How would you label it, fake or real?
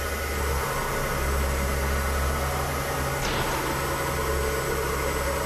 real